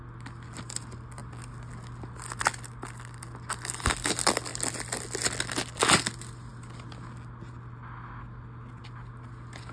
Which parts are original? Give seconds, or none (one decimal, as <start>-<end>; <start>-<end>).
0.0-9.7